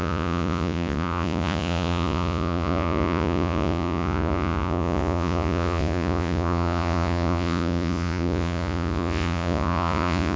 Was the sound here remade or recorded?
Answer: remade